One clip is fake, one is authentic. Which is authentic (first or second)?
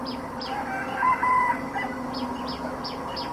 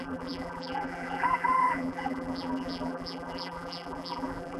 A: first